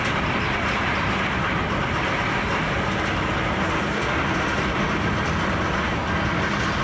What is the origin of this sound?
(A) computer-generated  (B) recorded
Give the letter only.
B